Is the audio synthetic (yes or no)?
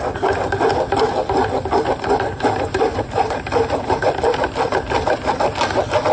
no